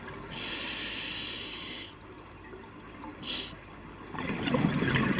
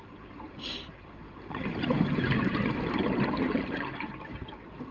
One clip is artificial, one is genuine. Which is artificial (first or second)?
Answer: second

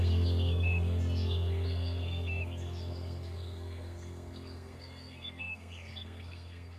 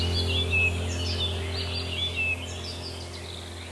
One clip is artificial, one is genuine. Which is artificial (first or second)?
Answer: first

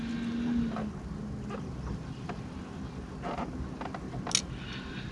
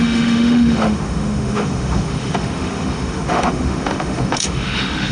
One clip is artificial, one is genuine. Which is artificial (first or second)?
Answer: second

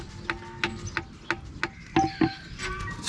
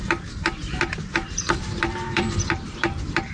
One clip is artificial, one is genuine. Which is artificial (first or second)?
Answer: second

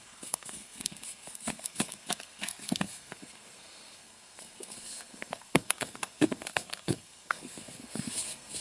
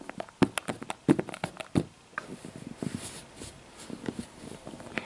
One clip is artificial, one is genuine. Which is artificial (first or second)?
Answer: first